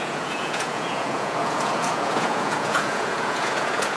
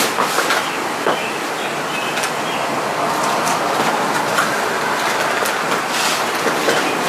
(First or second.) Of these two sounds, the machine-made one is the first